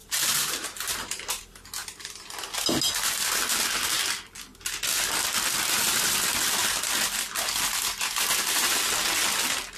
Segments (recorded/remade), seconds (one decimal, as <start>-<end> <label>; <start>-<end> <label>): 0.0-1.4 remade; 1.4-9.8 recorded